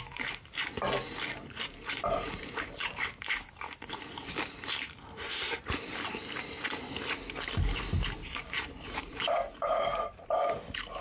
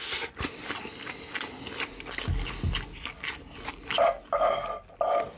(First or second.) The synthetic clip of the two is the first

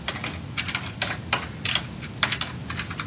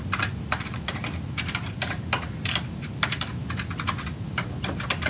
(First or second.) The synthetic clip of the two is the second